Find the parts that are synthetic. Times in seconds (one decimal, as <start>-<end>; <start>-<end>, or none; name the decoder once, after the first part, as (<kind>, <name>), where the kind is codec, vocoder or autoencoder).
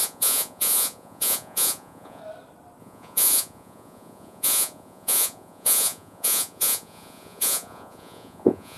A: 0.0-2.2 (vocoder, Vocos); 2.8-8.8